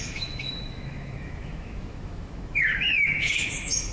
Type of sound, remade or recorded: remade